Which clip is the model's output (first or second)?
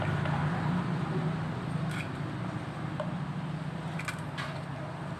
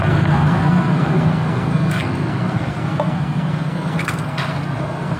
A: second